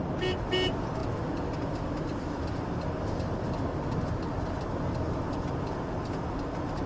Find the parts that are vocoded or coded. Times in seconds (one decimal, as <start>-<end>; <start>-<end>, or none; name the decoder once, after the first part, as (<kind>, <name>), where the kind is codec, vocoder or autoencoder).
none